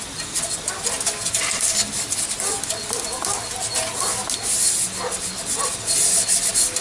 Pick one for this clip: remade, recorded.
recorded